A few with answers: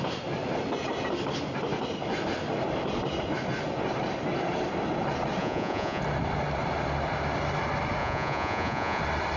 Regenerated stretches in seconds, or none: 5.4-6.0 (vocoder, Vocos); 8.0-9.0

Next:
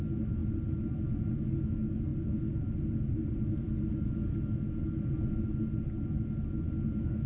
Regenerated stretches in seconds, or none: none